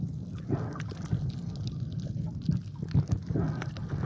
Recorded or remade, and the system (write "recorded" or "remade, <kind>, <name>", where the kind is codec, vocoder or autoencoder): recorded